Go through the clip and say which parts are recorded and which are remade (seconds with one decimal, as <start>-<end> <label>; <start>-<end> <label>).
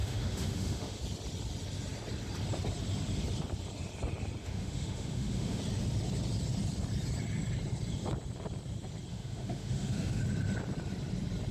0.0-1.0 remade; 1.0-4.4 recorded; 4.4-5.6 remade; 5.6-9.1 recorded; 9.1-10.2 remade; 10.2-11.5 recorded